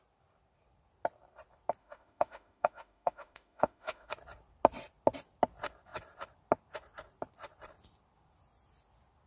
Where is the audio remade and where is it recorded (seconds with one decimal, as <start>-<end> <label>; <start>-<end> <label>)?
0.0-1.8 recorded; 1.8-4.1 remade; 4.1-9.3 recorded